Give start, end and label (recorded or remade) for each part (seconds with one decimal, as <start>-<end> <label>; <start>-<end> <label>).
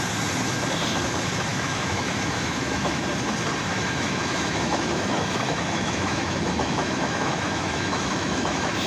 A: 0.0-1.5 recorded; 1.5-3.0 remade; 3.0-3.7 recorded; 3.7-8.9 remade